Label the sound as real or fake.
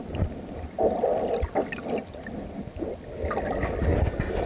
real